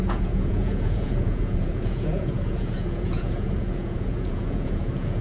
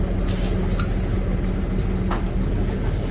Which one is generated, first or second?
first